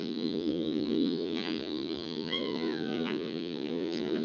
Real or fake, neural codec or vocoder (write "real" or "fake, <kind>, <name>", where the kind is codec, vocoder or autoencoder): fake, vocoder, Vocos